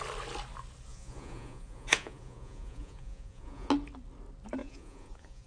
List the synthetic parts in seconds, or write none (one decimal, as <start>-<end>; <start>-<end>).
0.9-3.7; 4.6-5.5

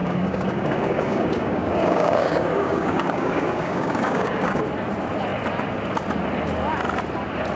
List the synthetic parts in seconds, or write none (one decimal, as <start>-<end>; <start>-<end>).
0.0-4.6

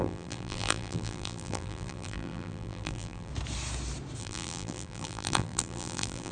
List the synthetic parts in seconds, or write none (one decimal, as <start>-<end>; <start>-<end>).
0.0-3.3; 4.2-6.3

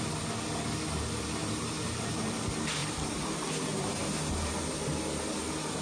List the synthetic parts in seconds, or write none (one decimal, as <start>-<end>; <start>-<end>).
1.4-2.3; 2.8-4.6

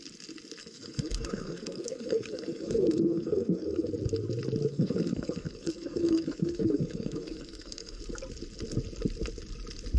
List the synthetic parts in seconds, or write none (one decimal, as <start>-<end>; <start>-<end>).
0.6-3.9; 4.7-8.0

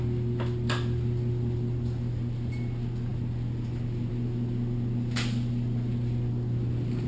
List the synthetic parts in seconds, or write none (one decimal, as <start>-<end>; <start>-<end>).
none